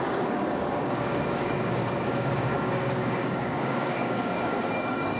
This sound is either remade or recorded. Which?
remade